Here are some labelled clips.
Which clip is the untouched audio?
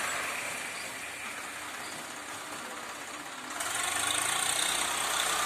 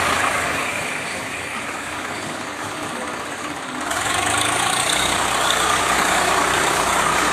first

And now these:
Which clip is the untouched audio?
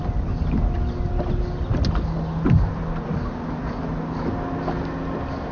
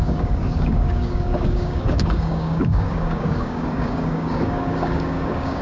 first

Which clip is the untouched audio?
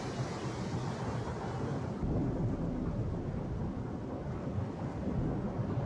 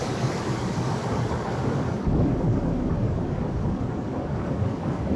first